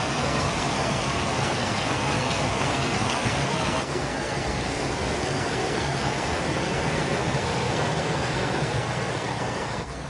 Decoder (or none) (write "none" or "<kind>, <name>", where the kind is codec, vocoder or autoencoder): codec, SNAC